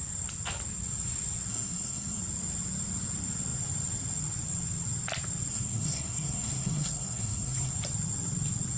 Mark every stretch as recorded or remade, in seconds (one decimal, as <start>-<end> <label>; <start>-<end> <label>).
0.0-1.5 recorded; 1.5-2.2 remade; 2.2-5.5 recorded; 5.5-7.7 remade; 7.7-8.8 recorded

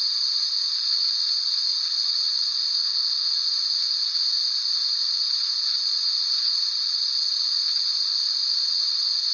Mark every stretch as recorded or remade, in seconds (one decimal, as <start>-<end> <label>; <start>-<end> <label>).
0.0-2.7 recorded; 2.7-3.3 remade; 3.3-9.3 recorded

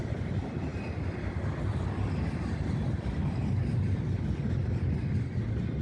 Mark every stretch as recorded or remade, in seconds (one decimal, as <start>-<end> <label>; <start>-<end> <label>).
0.0-5.8 recorded

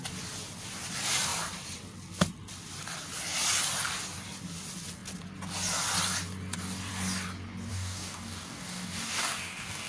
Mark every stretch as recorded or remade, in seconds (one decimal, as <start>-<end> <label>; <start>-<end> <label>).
0.0-7.7 recorded; 7.7-9.9 remade